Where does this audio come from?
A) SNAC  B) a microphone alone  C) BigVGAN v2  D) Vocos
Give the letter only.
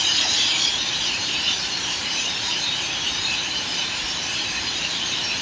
C